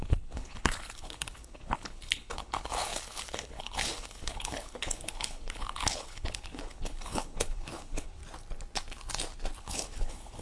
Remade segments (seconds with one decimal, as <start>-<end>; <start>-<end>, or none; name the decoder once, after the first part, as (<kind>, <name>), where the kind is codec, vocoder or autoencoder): 0.0-8.2 (codec, HILCodec); 9.6-10.4